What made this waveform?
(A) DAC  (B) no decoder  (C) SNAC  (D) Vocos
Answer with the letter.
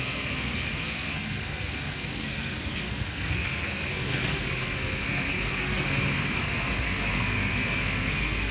C